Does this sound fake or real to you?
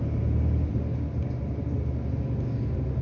real